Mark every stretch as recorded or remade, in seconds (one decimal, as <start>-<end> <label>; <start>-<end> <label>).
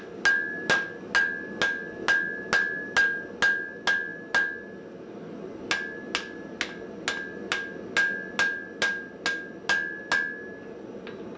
0.0-11.4 recorded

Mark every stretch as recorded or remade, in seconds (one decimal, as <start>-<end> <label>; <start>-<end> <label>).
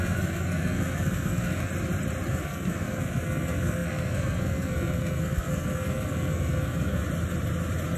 0.0-1.7 remade; 1.7-2.3 recorded; 2.3-7.0 remade; 7.0-8.0 recorded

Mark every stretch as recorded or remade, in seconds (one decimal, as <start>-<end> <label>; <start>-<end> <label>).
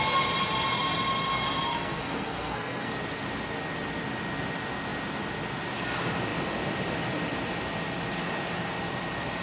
0.0-1.7 recorded; 1.7-2.9 remade; 2.9-9.4 recorded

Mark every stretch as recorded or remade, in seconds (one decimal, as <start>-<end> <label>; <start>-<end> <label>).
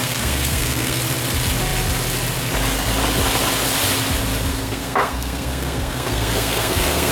0.0-1.0 remade; 1.0-4.5 recorded; 4.5-7.1 remade